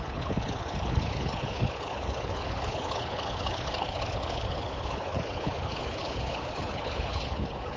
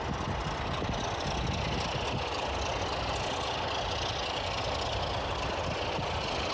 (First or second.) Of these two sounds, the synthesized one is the first